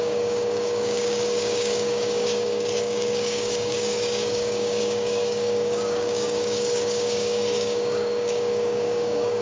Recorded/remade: remade